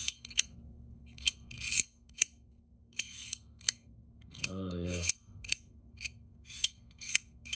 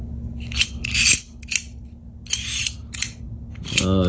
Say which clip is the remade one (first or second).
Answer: first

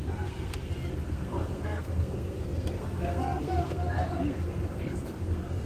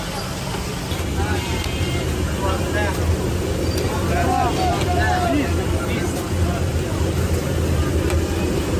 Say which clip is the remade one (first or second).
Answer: first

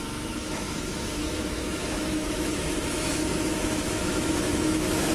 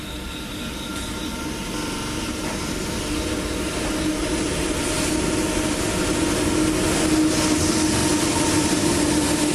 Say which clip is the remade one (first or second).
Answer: first